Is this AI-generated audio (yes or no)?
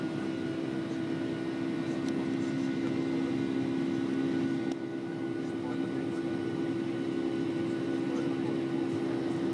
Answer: no